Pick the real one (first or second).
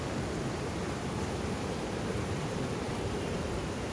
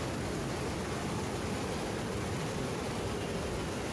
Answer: second